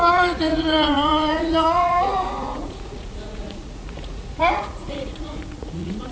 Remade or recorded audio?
remade